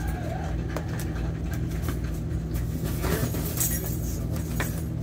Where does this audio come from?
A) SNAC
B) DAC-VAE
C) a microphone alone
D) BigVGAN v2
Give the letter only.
C